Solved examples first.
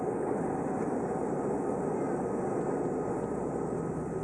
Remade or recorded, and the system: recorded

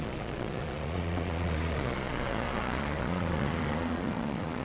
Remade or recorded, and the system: remade, vocoder, Vocos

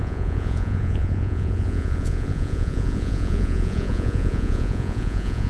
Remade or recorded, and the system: remade, vocoder, Vocos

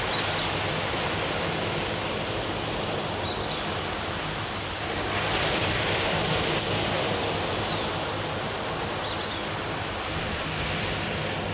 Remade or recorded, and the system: recorded